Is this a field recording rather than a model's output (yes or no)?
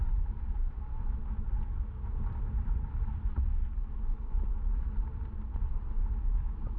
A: yes